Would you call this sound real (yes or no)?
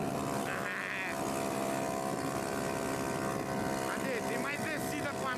yes